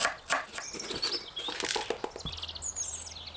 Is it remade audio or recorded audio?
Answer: recorded